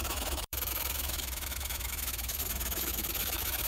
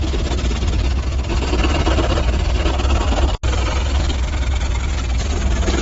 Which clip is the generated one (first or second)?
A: first